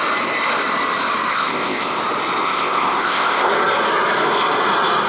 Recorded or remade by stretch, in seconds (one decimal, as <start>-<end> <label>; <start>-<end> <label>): 0.0-1.3 recorded; 1.3-2.0 remade; 2.0-2.4 recorded; 2.4-3.5 remade; 3.5-5.1 recorded